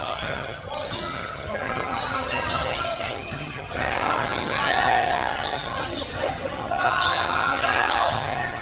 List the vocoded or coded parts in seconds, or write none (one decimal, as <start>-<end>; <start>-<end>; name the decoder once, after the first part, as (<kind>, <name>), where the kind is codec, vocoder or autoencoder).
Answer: 0.0-8.6 (vocoder, HiFi-GAN)